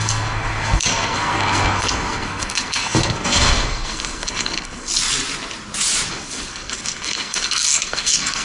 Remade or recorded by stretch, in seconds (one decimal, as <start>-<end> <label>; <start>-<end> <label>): 0.0-4.9 remade; 4.9-6.1 recorded; 6.1-8.4 remade